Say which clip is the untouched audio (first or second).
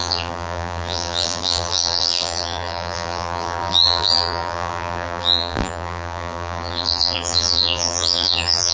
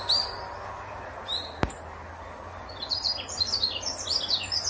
second